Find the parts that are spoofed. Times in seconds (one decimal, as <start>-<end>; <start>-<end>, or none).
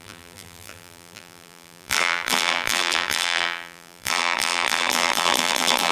0.0-5.9